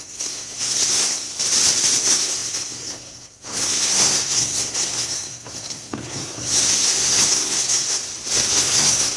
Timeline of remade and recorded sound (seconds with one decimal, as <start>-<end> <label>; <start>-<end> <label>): 0.0-1.3 remade; 1.3-2.0 recorded; 2.0-8.0 remade; 8.0-8.5 recorded; 8.5-9.2 remade